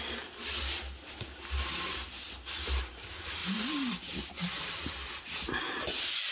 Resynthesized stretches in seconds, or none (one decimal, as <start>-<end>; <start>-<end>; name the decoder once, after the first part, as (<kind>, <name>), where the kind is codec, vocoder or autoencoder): none